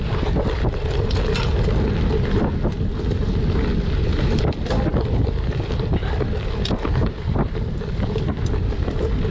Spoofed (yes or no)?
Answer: no